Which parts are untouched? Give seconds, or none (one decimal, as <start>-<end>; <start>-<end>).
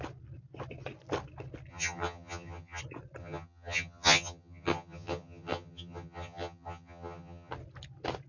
0.0-1.7; 2.8-3.2; 7.5-8.3